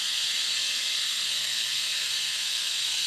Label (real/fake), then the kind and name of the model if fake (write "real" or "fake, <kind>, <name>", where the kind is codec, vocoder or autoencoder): fake, codec, SNAC